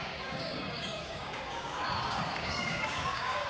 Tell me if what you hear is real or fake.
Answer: fake